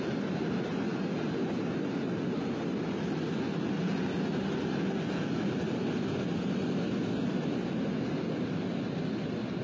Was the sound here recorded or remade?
recorded